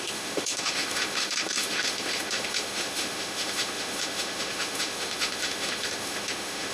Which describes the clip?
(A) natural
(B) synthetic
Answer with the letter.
B